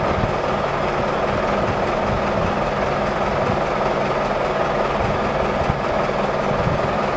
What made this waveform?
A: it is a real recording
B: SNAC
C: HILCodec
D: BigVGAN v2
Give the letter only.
A